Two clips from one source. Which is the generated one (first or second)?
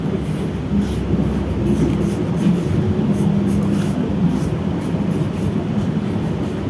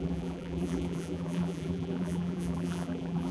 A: second